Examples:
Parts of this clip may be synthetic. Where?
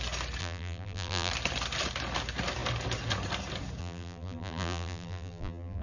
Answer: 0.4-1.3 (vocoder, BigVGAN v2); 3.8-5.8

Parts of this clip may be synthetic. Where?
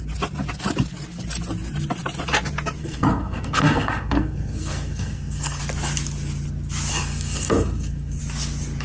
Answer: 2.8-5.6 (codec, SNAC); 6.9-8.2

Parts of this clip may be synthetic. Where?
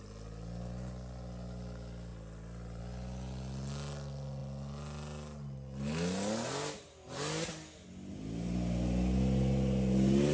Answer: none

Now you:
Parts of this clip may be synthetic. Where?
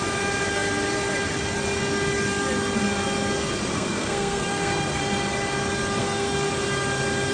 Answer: 3.7-5.0 (codec, SNAC); 6.0-6.5